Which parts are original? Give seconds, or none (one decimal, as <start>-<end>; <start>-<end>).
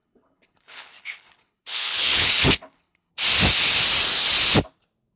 3.1-5.2